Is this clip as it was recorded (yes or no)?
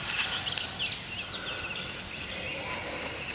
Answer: yes